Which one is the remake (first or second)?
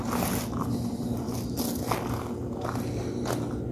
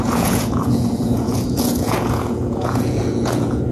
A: second